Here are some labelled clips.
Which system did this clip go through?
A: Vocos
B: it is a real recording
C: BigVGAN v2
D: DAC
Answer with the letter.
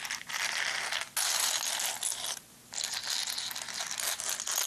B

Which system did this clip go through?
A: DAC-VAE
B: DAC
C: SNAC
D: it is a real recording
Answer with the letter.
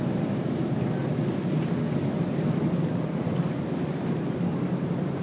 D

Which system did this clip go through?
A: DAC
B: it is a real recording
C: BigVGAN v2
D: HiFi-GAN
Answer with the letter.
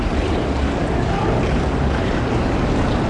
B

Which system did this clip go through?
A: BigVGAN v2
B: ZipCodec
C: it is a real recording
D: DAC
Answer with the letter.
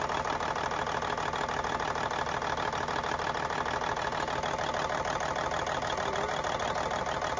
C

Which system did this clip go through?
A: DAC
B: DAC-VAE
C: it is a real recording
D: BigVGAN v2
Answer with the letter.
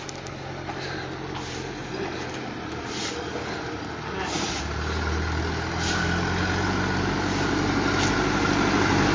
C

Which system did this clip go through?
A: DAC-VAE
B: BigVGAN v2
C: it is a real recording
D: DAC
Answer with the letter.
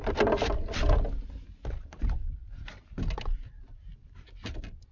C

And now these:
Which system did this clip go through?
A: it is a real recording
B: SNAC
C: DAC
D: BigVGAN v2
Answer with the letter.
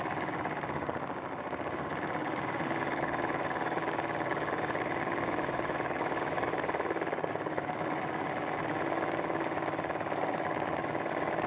C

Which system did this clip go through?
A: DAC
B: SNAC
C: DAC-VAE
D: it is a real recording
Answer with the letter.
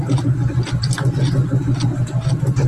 D